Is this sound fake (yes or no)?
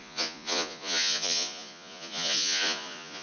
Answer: yes